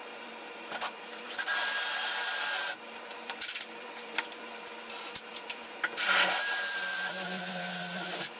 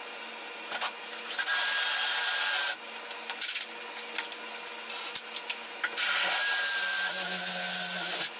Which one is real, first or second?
second